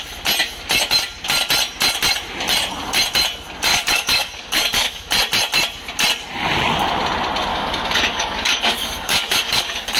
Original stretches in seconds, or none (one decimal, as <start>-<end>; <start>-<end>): 0.0-3.7; 5.1-7.5